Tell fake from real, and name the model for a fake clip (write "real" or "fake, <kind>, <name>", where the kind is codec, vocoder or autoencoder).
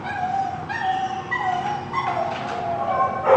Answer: real